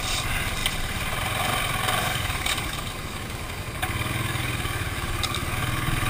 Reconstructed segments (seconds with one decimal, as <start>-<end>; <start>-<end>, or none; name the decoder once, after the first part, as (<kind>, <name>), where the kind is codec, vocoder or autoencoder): 2.0-6.1 (codec, DAC)

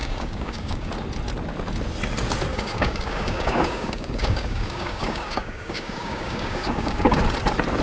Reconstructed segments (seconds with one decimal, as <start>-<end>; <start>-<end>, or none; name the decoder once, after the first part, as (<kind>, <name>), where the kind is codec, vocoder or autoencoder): 0.0-0.9 (codec, DAC); 2.5-7.2

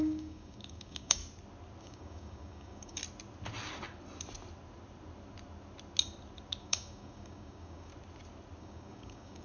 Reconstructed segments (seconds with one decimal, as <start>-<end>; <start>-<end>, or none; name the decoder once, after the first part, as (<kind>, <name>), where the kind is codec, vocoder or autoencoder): 0.0-1.2 (codec, DAC); 1.8-3.0; 6.6-7.9; 8.6-9.4